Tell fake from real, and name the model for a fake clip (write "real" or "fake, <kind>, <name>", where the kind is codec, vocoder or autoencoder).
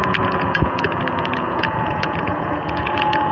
fake, vocoder, Vocos